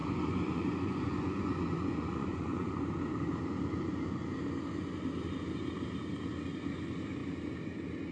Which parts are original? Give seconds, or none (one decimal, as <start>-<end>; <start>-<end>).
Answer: 2.7-8.1